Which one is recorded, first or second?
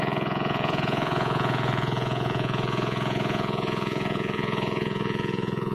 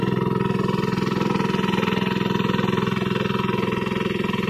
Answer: second